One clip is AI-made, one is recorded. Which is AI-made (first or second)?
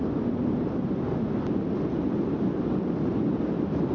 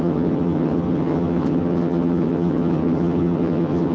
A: second